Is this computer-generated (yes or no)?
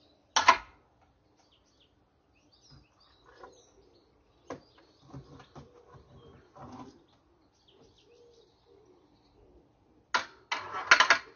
no